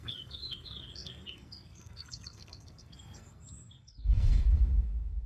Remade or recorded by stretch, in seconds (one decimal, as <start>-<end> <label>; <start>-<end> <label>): 0.0-5.3 remade